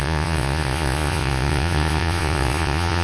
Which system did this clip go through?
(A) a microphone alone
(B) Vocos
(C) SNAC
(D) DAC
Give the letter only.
B